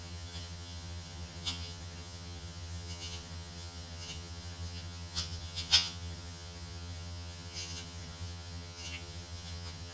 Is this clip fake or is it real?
fake